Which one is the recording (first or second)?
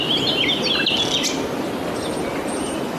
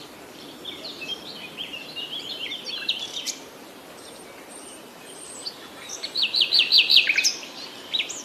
first